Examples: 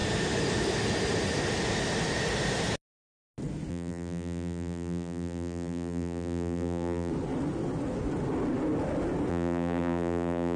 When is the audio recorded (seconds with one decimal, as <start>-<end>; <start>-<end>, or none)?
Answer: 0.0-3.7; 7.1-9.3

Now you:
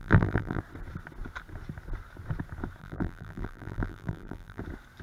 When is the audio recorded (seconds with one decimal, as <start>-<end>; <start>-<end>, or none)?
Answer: 0.6-2.8; 4.6-5.0

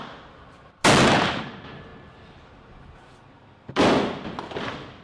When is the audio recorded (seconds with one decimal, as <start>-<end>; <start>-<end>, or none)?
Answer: 0.0-5.0